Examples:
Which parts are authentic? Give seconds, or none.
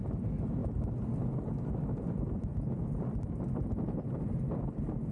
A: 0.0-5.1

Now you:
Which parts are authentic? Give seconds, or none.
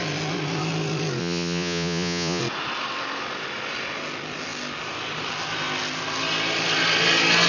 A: 0.0-1.2; 2.4-7.5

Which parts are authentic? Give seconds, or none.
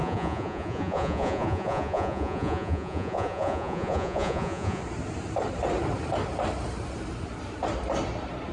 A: 4.8-8.5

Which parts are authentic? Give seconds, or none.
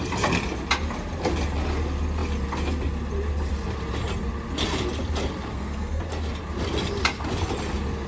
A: 0.0-5.5; 6.0-8.1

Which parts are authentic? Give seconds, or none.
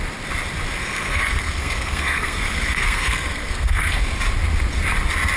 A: 0.0-0.8; 4.0-5.4